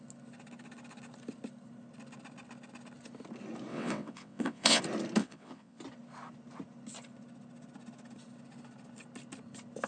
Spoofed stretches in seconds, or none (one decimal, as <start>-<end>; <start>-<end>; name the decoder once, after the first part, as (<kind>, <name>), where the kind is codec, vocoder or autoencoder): 3.7-4.8 (vocoder, WaveNeXt); 5.2-5.8